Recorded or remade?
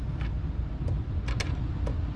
recorded